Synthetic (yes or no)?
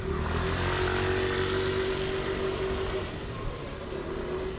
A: no